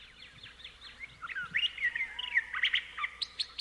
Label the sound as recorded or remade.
recorded